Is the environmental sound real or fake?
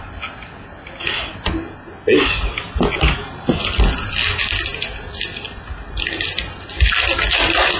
real